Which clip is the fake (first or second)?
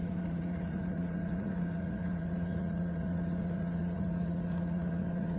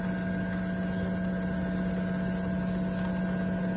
first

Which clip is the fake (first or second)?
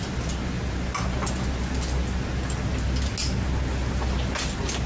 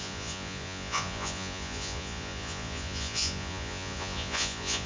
second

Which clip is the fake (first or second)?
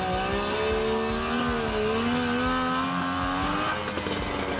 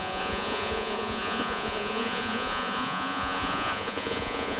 second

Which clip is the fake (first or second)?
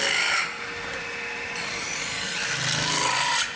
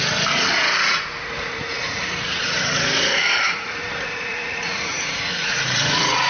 second